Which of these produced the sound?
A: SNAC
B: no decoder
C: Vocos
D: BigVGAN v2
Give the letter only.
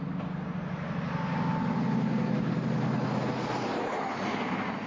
B